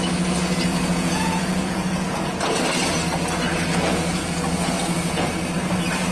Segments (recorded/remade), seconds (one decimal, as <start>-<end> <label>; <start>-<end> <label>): 0.0-0.7 recorded; 0.7-2.6 remade; 2.6-3.7 recorded; 3.7-5.3 remade; 5.3-6.1 recorded